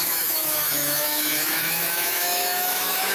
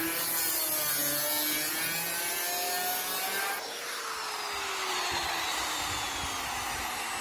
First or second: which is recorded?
second